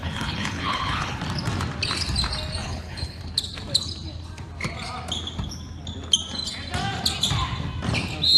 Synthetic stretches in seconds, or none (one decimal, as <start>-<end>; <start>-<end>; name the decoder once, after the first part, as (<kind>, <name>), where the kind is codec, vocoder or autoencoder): 0.0-1.2 (codec, HILCodec); 2.6-3.2